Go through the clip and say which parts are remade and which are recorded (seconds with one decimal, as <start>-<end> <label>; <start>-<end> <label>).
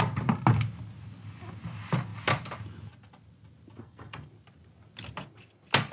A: 0.0-3.8 recorded; 3.8-4.3 remade; 4.3-5.9 recorded